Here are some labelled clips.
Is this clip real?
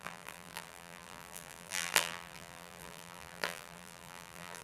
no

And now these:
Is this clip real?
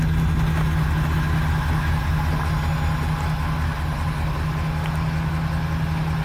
yes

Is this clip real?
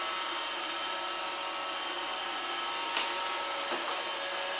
yes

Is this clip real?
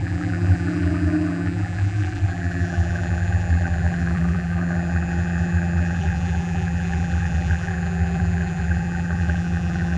no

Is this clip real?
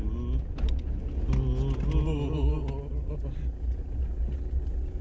yes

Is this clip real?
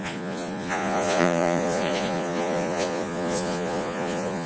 no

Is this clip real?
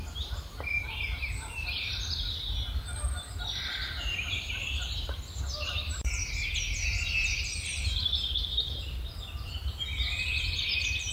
no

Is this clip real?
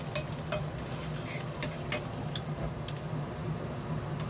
yes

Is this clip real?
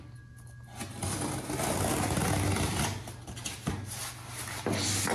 yes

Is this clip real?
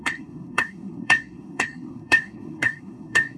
no